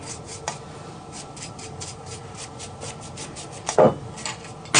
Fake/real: real